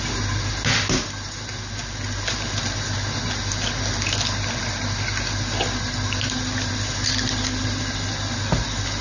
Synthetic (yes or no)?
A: no